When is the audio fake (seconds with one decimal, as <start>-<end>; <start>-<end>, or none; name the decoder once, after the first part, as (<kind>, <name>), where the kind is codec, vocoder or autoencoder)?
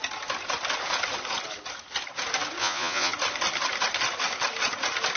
2.6-3.1 (vocoder, Vocos)